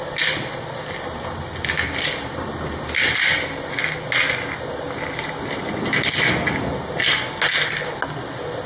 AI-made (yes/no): no